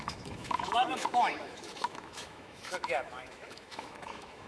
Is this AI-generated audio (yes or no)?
yes